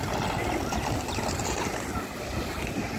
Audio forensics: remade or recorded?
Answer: recorded